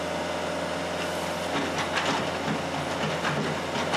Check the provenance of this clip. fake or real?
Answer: real